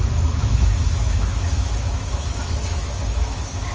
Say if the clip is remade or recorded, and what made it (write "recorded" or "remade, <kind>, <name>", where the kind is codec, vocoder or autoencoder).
remade, autoencoder, DAC-VAE